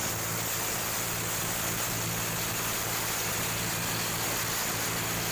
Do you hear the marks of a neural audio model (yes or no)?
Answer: no